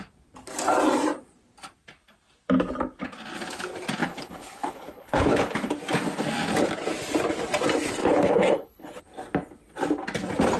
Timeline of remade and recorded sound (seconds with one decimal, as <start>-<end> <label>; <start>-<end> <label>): 0.0-4.0 recorded; 4.0-5.7 remade; 5.7-8.0 recorded; 8.0-9.0 remade; 9.0-10.6 recorded